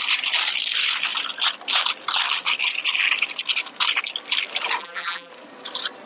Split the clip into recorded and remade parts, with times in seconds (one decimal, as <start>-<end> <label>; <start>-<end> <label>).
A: 0.0-4.8 recorded; 4.8-5.3 remade; 5.3-6.1 recorded